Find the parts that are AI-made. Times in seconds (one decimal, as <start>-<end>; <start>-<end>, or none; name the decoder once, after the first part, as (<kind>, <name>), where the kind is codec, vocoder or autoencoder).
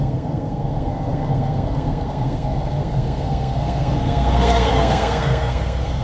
0.0-6.0 (codec, SNAC)